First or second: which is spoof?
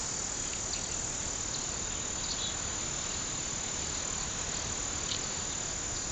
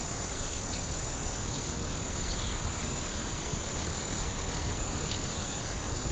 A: second